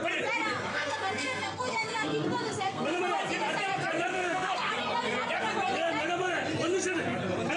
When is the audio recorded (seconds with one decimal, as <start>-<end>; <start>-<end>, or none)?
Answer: 0.0-0.7; 3.0-4.1; 4.7-7.6